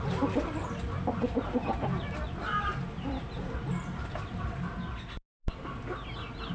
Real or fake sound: real